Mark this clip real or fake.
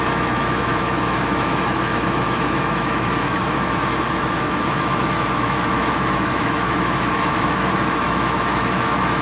fake